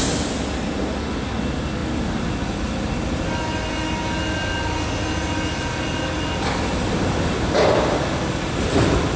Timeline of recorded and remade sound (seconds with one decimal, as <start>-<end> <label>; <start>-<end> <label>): 0.0-9.2 recorded